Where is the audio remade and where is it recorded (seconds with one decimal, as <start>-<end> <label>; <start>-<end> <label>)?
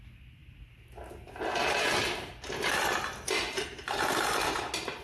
0.0-5.0 recorded